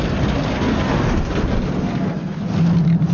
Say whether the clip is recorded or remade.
recorded